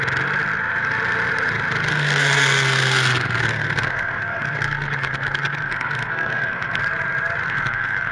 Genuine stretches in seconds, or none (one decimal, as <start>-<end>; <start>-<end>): 0.0-1.9; 6.8-7.4